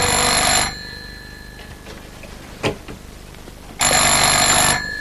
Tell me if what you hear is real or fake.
real